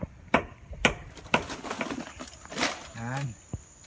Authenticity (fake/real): real